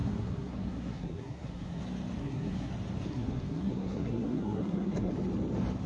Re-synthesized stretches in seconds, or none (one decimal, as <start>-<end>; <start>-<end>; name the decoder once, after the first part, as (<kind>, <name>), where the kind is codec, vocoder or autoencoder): 0.0-1.8 (codec, SNAC); 2.2-2.7; 3.1-5.1